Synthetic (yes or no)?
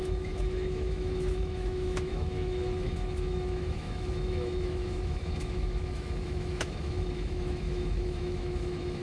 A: yes